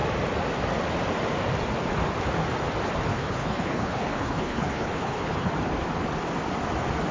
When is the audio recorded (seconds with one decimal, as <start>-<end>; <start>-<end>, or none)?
0.0-3.1; 5.5-7.1